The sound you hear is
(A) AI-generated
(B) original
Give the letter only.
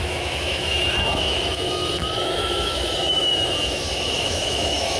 A